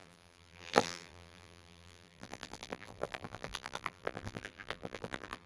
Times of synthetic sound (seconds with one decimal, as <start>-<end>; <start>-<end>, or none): 0.0-5.5